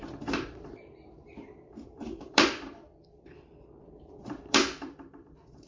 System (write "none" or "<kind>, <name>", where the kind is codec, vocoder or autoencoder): vocoder, BigVGAN v2